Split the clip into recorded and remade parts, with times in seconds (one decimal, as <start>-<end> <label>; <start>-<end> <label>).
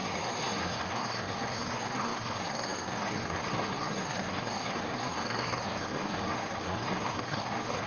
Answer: 0.0-7.9 remade